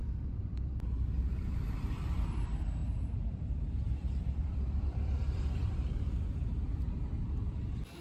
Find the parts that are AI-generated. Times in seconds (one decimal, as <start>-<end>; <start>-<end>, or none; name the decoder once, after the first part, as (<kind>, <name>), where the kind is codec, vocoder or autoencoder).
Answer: 0.0-1.7 (vocoder, BigVGAN v2); 2.8-7.6